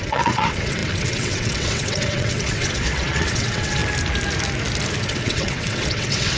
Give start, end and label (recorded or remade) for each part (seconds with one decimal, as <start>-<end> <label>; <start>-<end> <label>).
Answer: 0.0-3.8 remade; 3.8-5.0 recorded; 5.0-6.4 remade